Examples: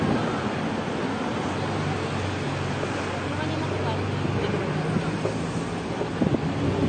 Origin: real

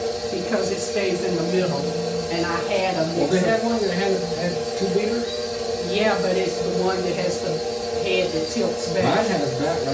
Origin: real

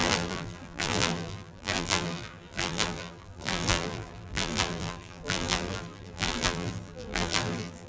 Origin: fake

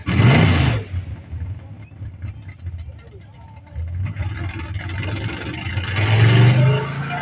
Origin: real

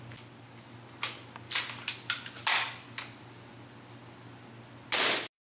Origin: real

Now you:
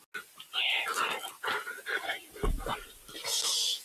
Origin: real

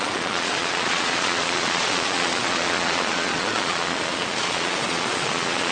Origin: fake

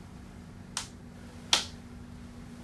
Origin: real